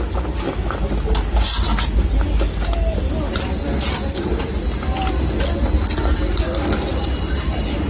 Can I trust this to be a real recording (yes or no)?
yes